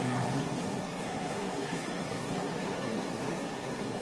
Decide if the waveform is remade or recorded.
remade